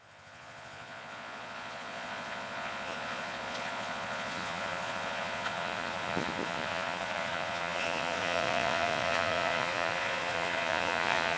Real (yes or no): no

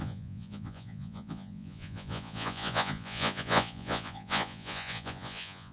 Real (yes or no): no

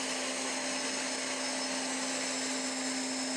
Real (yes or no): yes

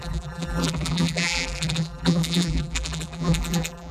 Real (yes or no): no